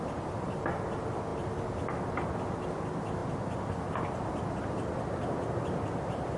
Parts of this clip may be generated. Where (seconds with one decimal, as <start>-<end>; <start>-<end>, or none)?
none